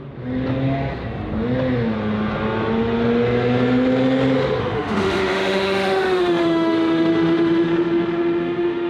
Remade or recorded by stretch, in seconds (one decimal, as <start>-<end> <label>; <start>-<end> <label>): 0.0-4.6 recorded; 4.6-8.9 remade